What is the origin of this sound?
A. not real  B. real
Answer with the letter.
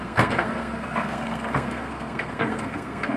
A